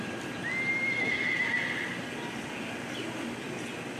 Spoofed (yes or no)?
no